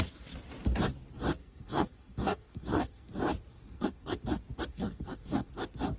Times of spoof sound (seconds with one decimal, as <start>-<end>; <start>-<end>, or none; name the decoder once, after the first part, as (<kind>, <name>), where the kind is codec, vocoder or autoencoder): 1.4-3.1 (codec, SNAC); 3.5-4.2; 4.7-5.5